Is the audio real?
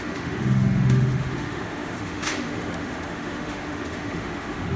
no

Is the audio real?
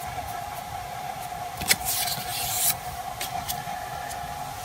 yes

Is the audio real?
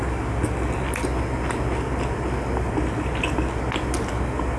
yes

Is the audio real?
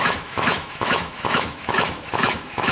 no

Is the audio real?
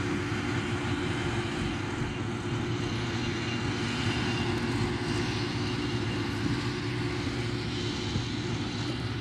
yes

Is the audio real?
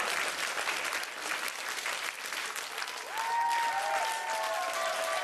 yes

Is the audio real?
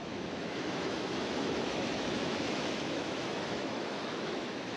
no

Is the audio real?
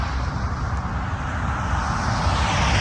yes